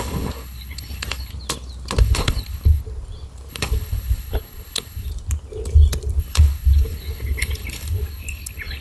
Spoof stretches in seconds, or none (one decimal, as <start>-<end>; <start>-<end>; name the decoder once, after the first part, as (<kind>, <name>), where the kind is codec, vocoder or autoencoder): 0.0-1.3 (codec, HILCodec); 2.0-2.8; 3.5-5.1; 6.2-8.8

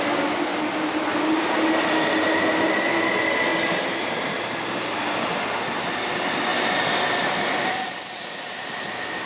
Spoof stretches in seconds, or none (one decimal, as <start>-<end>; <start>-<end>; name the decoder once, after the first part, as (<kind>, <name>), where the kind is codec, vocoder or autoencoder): none